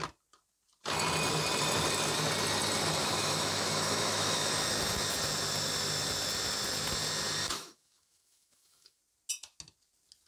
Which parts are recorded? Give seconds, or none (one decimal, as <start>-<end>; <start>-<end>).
0.0-3.0; 4.5-7.4; 9.0-10.3